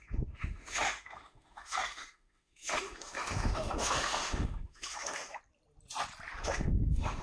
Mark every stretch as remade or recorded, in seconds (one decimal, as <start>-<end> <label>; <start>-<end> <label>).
0.0-5.4 remade; 5.4-6.3 recorded; 6.3-7.2 remade